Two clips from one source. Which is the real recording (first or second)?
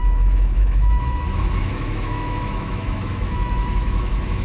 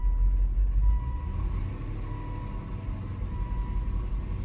second